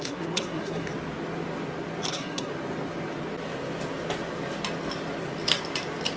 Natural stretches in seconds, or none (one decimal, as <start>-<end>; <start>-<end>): 0.9-2.1; 2.5-6.2